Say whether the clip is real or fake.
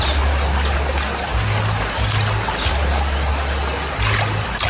real